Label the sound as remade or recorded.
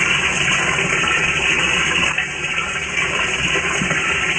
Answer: remade